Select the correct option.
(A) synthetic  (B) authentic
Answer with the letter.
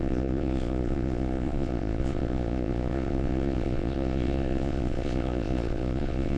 A